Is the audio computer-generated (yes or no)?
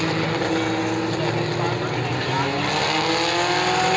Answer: no